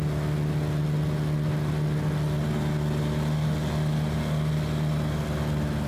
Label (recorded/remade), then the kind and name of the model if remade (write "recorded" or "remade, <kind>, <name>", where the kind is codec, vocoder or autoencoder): recorded